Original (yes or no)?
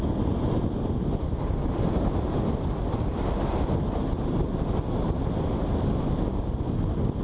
yes